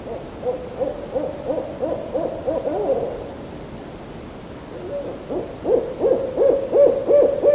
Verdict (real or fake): real